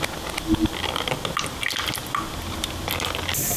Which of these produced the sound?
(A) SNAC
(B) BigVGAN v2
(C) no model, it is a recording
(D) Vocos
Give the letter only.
C